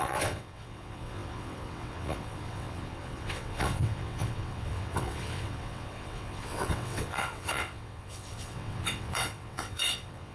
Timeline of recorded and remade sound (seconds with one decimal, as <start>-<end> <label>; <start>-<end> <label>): 0.0-10.3 remade